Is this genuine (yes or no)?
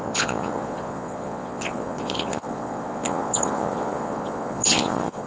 no